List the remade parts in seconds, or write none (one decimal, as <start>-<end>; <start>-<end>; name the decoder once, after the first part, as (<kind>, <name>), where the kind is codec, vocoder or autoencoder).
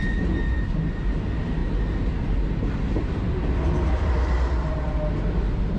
none